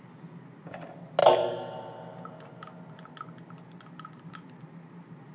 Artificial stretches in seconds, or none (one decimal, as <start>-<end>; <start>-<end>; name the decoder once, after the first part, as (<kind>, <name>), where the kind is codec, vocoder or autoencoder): none